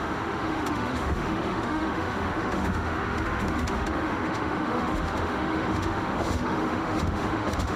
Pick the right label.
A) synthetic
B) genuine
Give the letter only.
A